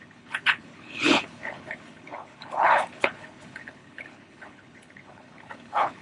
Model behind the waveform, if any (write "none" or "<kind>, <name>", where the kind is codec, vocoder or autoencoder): codec, HILCodec